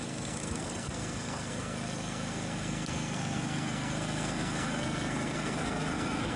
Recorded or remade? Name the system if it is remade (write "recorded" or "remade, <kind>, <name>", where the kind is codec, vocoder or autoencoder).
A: remade, codec, SNAC